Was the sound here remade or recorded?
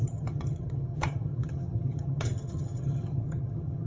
remade